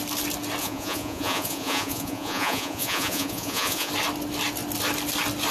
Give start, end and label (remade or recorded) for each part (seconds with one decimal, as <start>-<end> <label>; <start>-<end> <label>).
0.0-0.6 recorded; 0.6-3.9 remade; 3.9-5.5 recorded